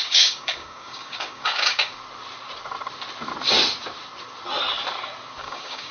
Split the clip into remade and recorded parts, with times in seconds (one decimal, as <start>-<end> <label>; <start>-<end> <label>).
0.0-1.9 remade; 1.9-5.4 recorded; 5.4-5.9 remade